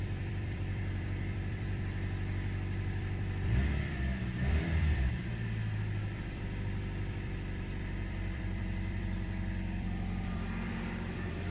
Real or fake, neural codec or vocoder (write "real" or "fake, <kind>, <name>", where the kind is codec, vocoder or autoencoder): fake, vocoder, BigVGAN v2